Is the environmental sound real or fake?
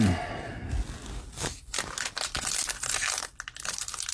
real